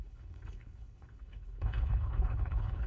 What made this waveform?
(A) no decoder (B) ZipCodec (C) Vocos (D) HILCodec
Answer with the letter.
D